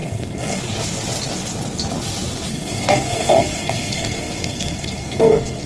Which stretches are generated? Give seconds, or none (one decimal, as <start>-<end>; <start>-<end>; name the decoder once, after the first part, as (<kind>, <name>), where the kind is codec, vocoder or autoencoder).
0.0-0.6 (codec, SNAC); 2.5-5.7